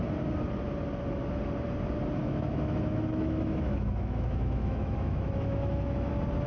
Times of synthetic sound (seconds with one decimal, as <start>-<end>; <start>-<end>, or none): 2.2-6.1